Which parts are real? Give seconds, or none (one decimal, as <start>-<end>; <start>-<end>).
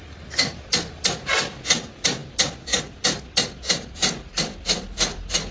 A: none